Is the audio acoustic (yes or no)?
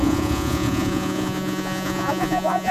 no